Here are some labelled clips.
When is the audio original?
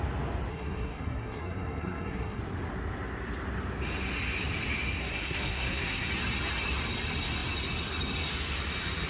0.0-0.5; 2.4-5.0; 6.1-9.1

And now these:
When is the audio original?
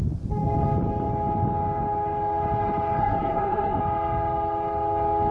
0.0-3.0; 3.8-5.3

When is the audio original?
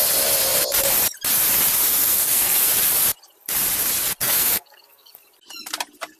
0.0-2.0; 2.7-4.2; 5.1-6.2